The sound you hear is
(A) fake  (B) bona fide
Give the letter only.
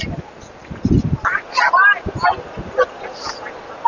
B